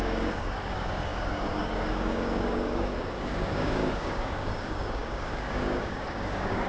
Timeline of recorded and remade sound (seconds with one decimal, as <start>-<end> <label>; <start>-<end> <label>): 0.0-6.7 remade